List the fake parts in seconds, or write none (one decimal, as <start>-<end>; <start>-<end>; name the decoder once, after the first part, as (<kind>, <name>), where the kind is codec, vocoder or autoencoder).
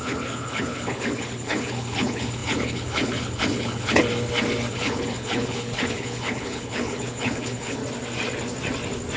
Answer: 0.0-4.0 (codec, HILCodec); 4.7-7.8